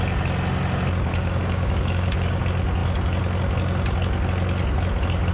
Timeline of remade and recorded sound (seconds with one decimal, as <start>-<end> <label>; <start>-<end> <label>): 0.0-1.1 recorded; 1.1-2.4 remade; 2.4-5.3 recorded